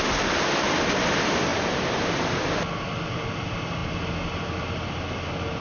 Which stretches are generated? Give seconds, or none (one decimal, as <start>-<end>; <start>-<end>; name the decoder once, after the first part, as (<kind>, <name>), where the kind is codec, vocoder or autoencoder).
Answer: 1.5-2.3 (vocoder, BigVGAN v2)